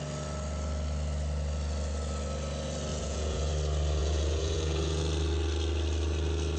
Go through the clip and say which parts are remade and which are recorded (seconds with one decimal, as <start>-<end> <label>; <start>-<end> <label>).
0.0-2.9 recorded; 2.9-3.5 remade; 3.5-4.0 recorded; 4.0-5.0 remade; 5.0-6.6 recorded